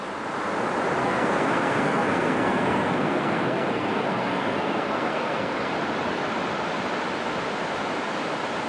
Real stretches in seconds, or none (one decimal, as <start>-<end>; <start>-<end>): 0.0-1.0; 5.7-8.7